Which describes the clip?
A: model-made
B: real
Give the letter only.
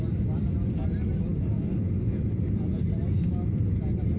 B